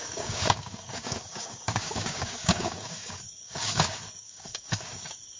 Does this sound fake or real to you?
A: fake